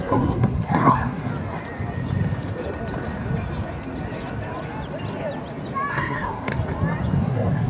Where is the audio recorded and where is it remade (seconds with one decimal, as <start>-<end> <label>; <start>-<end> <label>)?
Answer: 0.0-1.3 remade; 1.3-5.9 recorded; 5.9-6.5 remade; 6.5-7.2 recorded; 7.2-7.7 remade